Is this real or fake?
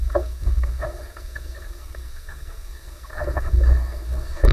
fake